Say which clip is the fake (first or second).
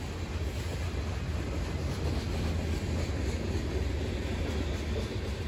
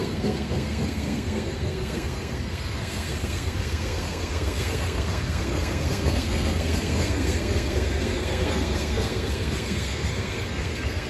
second